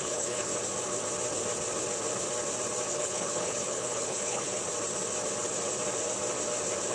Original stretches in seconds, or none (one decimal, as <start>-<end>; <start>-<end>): 0.5-2.9; 4.6-6.9